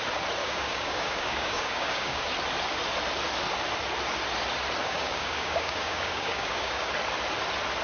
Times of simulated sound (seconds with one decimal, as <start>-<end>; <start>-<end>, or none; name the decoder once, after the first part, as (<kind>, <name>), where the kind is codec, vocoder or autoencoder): 0.4-2.2 (codec, DAC); 4.8-6.9